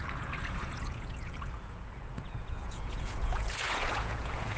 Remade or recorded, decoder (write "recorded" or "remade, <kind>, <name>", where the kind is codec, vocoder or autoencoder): remade, vocoder, Vocos